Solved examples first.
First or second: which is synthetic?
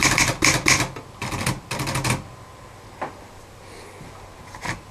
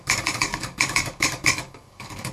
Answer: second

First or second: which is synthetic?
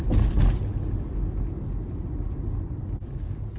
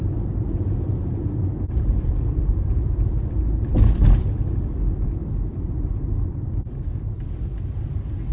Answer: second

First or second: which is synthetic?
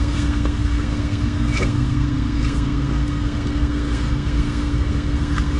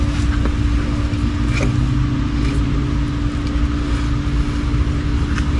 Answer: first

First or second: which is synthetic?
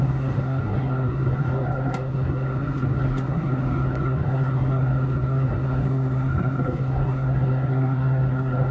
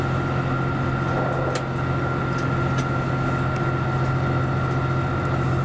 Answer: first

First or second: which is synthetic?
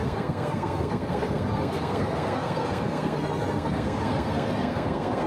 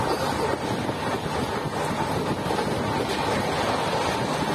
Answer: first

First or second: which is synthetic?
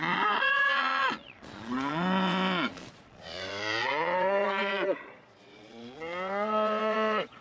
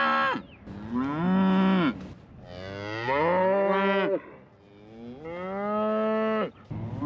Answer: first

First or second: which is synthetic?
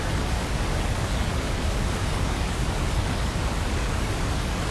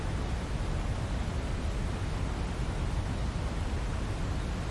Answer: first